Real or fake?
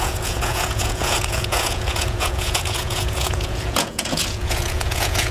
fake